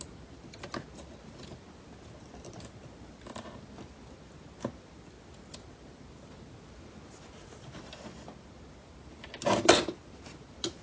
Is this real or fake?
real